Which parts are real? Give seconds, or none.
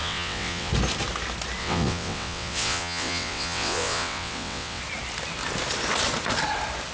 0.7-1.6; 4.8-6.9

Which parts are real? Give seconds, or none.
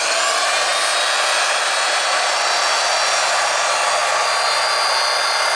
0.0-5.6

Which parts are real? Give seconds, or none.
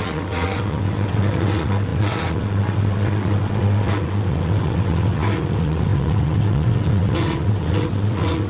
none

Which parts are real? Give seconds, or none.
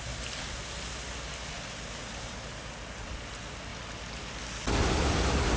0.0-5.6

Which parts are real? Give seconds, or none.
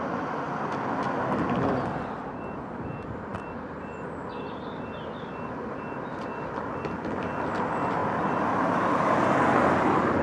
0.0-10.2